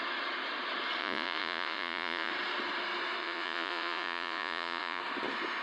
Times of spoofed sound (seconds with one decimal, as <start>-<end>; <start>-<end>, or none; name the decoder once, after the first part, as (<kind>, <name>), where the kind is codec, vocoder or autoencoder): 1.0-2.3 (vocoder, Vocos); 3.2-5.0